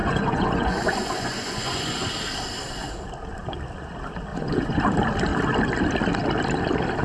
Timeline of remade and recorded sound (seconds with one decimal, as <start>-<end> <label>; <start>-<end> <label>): 0.0-2.1 remade; 2.1-4.3 recorded; 4.3-4.8 remade; 4.8-7.0 recorded